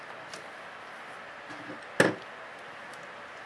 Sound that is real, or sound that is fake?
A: real